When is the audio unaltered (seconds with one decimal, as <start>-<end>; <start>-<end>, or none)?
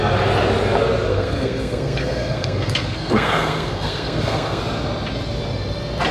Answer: 0.0-1.1; 4.6-6.1